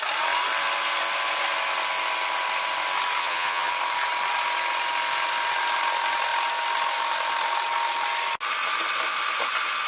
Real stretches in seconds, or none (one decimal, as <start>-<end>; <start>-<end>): 0.0-3.2; 3.7-9.9